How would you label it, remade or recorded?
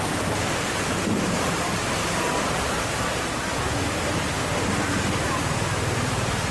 recorded